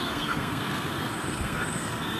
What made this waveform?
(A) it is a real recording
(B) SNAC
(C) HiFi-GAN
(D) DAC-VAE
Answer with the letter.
B